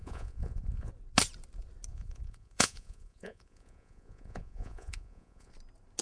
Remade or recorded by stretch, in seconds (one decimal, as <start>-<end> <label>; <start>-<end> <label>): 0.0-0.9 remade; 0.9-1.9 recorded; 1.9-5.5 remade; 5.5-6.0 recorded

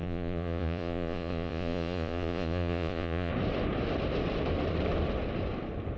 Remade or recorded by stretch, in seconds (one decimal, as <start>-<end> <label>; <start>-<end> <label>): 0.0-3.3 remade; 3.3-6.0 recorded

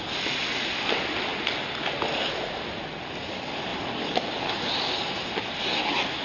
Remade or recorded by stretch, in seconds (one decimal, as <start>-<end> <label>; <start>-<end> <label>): 0.0-3.7 recorded; 3.7-5.4 remade; 5.4-6.2 recorded

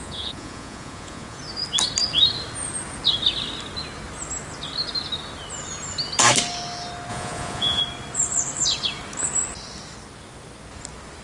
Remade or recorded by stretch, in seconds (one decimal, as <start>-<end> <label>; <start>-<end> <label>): 0.0-1.4 remade; 1.4-7.1 recorded; 7.1-7.8 remade; 7.8-11.2 recorded

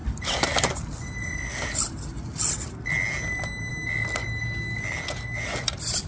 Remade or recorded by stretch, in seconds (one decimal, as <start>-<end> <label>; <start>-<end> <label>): 0.0-6.1 recorded

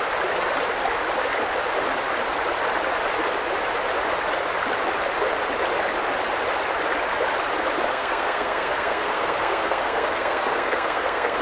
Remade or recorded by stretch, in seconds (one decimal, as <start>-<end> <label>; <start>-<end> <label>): 0.0-7.9 recorded; 7.9-11.4 remade